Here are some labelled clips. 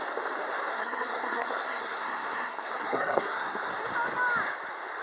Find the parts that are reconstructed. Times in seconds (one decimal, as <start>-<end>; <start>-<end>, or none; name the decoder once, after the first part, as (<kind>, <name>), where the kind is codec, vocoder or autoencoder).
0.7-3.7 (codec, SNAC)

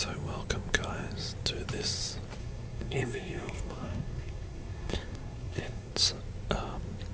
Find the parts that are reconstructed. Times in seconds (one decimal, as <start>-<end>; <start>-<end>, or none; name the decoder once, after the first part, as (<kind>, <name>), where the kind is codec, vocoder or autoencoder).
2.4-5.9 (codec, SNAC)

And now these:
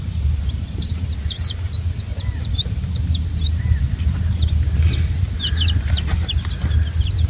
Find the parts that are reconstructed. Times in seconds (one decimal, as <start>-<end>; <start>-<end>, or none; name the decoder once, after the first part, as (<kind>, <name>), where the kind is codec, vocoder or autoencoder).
none

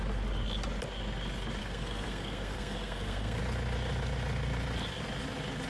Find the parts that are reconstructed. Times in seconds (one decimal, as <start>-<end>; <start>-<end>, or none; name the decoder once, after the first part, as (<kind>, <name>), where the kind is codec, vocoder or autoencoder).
1.6-3.4 (codec, SNAC)